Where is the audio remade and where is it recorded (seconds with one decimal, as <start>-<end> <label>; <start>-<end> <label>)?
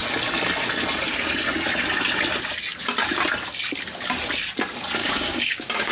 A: 0.0-5.0 recorded; 5.0-5.9 remade